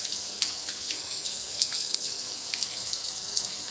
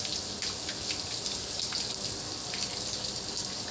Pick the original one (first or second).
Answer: second